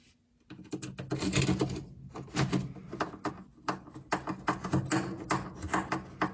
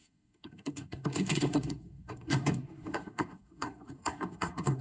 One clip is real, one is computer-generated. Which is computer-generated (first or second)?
second